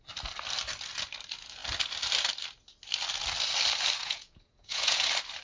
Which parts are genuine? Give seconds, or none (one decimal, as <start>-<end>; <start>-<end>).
0.0-4.0; 5.0-5.4